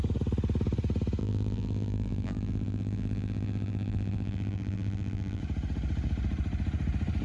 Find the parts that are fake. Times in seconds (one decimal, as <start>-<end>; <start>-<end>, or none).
1.2-5.4